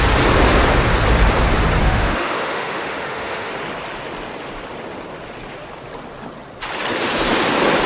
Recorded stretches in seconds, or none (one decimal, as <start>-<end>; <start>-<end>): 0.0-1.8; 3.5-7.9